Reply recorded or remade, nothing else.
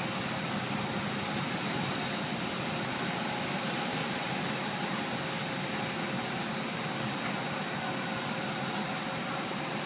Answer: recorded